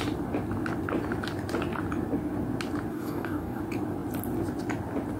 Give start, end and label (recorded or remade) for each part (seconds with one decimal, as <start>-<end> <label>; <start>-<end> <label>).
0.0-2.9 recorded; 2.9-3.6 remade; 3.6-5.2 recorded